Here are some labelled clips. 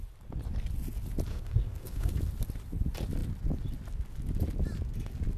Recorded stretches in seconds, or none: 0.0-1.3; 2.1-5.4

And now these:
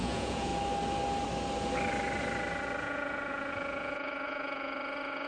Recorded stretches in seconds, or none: 0.5-2.8

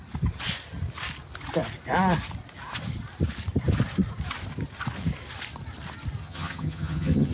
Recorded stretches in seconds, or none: 0.0-6.2

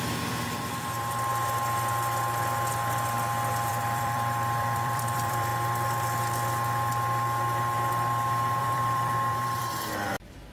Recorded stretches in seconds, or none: 1.3-3.7; 5.5-8.6

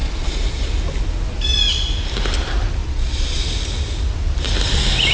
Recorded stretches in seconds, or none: 0.7-2.8; 3.4-5.1

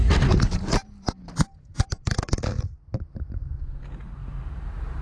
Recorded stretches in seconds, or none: 2.4-4.2

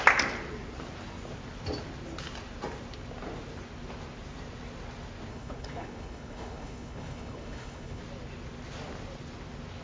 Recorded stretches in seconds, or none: 0.0-5.3; 8.0-9.8